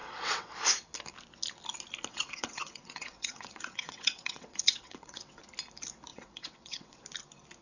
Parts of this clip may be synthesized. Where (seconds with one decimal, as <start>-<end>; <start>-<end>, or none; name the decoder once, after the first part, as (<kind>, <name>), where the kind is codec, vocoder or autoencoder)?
0.0-0.5 (vocoder, WaveNeXt); 2.1-5.4; 6.1-7.0